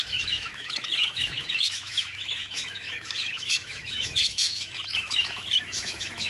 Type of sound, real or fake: fake